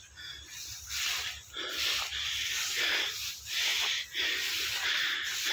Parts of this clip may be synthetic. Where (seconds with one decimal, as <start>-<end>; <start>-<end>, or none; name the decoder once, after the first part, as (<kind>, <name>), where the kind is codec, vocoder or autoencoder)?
none